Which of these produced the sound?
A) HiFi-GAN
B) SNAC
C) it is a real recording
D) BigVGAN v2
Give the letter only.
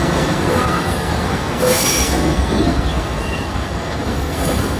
B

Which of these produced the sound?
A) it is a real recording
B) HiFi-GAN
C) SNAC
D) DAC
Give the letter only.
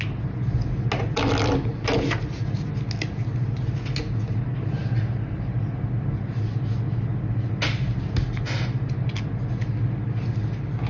A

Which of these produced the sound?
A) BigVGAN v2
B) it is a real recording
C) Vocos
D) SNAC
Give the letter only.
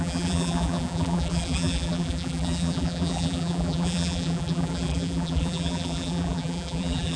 A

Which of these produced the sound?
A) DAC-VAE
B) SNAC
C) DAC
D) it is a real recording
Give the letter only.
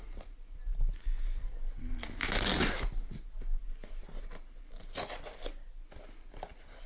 D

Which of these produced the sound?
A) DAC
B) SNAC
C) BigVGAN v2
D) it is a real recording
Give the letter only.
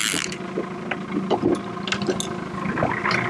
D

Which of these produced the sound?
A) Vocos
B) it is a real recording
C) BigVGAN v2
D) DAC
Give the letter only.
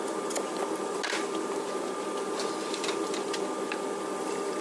B